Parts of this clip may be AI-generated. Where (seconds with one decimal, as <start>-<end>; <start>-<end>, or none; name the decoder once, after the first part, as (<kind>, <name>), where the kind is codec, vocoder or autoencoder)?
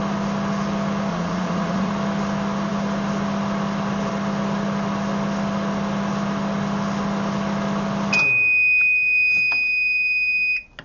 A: 1.1-1.9 (vocoder, Vocos)